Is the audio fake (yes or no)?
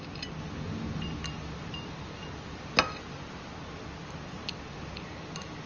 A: no